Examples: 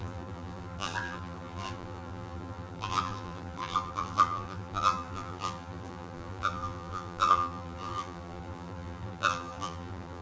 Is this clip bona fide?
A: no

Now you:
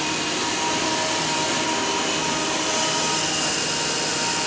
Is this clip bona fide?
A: yes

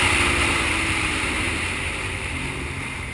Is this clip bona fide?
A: no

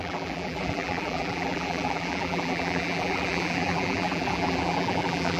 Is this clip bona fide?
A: no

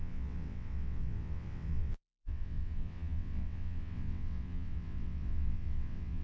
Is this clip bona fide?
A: no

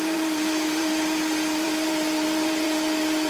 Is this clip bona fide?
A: no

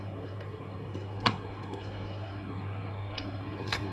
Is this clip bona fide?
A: no